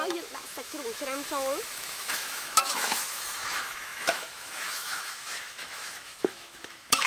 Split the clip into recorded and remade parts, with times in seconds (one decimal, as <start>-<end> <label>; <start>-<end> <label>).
0.0-7.1 remade